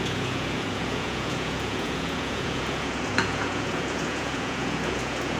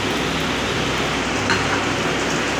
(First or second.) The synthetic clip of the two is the first